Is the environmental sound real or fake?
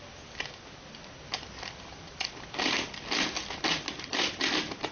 real